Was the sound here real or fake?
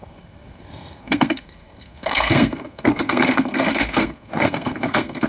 fake